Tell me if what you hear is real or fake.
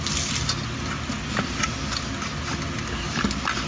real